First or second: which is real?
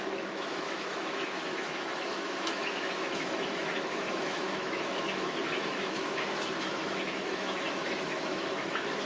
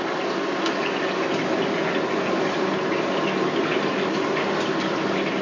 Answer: second